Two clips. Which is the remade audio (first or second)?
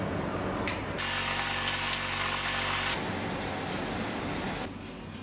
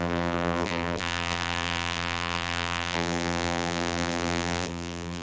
second